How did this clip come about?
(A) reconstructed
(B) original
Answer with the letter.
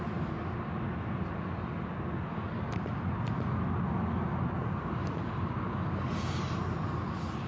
B